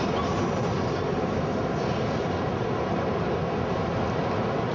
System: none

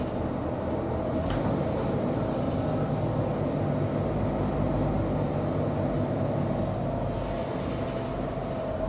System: none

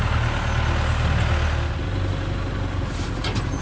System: none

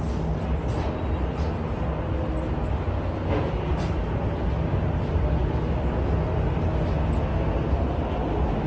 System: none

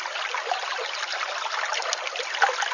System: none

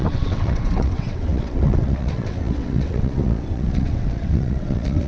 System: vocoder, WaveNeXt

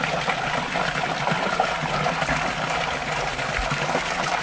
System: none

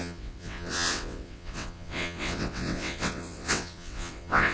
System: vocoder, WaveNeXt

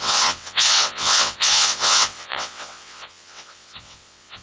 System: vocoder, WaveNeXt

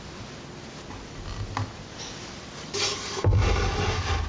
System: none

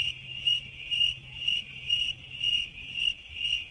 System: none